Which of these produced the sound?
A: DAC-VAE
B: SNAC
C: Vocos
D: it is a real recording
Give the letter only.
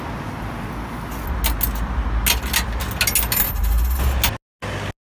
D